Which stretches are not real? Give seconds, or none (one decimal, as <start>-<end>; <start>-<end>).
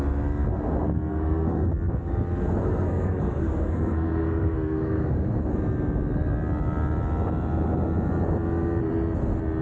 1.1-1.7; 2.6-5.3